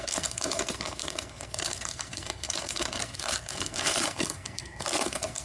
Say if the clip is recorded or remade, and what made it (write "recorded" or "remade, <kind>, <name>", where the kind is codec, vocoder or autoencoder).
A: remade, codec, SNAC